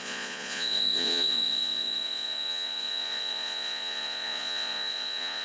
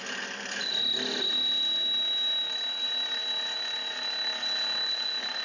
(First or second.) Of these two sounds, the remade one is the first